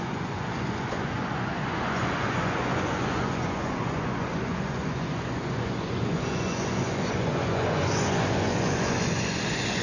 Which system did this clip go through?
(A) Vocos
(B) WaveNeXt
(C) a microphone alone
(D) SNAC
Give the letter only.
A